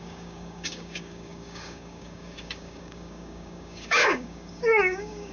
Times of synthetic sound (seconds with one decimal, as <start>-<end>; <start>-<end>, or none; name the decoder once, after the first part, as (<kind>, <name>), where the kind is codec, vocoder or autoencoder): 0.0-5.3 (codec, DAC)